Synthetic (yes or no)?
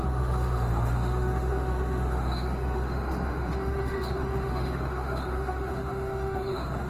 yes